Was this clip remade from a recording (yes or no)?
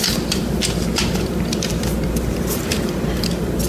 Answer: yes